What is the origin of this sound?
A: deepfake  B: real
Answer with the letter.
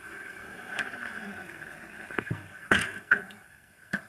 A